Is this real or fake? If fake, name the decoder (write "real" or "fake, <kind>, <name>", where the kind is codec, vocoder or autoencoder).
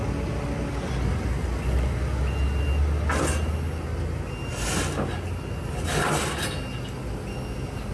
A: real